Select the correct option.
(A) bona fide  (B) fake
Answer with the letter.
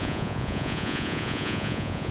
B